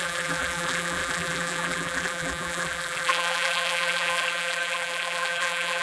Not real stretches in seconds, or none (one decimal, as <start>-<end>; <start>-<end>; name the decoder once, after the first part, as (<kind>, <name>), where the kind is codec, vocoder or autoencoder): 0.0-5.8 (vocoder, BigVGAN v2)